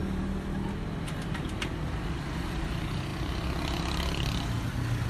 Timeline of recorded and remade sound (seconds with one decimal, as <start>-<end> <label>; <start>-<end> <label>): 0.0-5.1 recorded